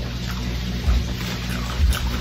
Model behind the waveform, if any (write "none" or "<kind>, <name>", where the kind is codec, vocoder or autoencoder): none